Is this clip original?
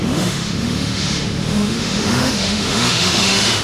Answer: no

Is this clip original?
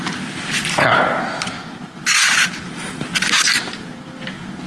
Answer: yes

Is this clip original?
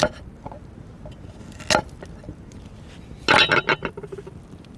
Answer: no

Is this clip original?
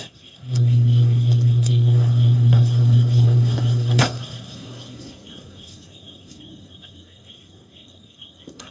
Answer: no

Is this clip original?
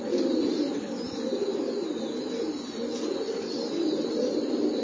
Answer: yes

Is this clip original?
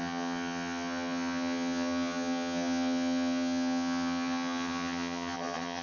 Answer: no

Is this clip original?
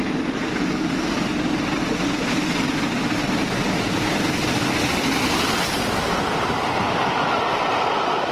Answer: yes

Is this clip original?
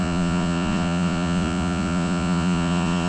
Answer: no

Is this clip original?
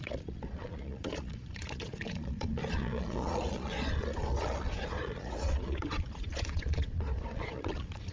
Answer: no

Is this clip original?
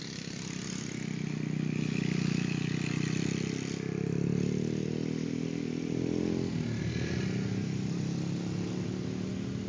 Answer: yes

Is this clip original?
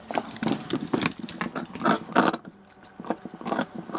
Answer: yes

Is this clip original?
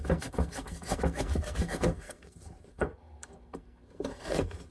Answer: no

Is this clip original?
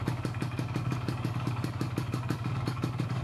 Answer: no